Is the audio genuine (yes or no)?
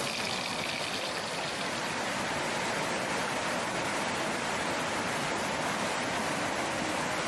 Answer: yes